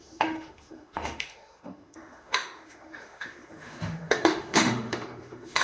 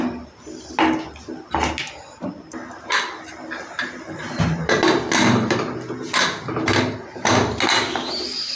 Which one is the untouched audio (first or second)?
second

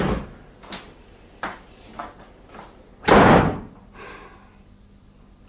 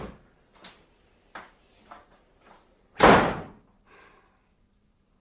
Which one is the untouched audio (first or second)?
first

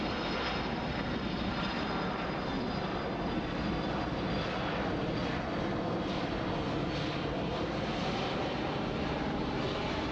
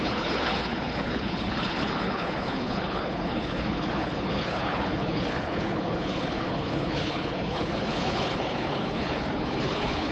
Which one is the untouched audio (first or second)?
first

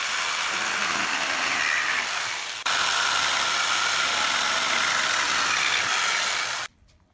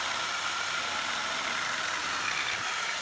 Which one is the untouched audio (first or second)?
first